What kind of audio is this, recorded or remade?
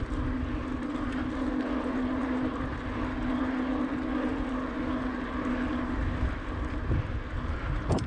recorded